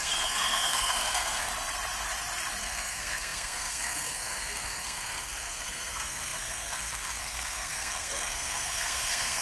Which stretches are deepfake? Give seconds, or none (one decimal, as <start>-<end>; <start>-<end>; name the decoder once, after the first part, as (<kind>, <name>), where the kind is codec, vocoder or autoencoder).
0.0-1.5 (codec, SNAC); 2.6-9.4